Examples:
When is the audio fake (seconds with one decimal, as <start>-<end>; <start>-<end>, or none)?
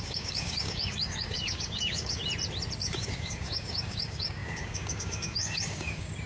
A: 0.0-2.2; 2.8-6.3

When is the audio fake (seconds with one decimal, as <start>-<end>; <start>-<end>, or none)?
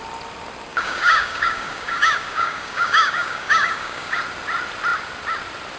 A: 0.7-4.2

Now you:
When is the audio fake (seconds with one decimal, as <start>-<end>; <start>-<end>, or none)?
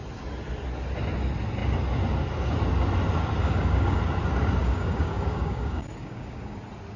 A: 3.4-4.0; 4.6-6.6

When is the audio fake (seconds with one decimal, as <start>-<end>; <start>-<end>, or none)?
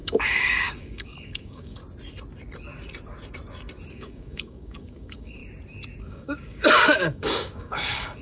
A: 0.0-1.8; 3.9-5.4; 6.0-8.2